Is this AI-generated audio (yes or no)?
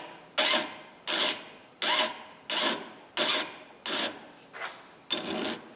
no